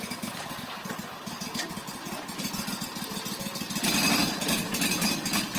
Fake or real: real